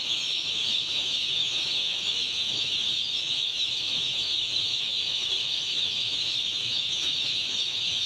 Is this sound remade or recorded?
remade